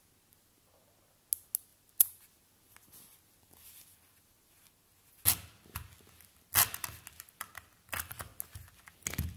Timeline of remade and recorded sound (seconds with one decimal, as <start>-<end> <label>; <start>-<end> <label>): 0.0-9.4 recorded